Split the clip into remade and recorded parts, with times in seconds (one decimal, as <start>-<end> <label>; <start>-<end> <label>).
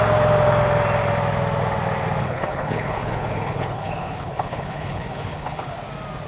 0.0-2.2 recorded; 2.2-5.8 remade; 5.8-6.3 recorded